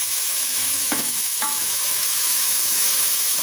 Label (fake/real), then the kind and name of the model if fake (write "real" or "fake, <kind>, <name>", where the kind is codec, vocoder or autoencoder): fake, autoencoder, DAC-VAE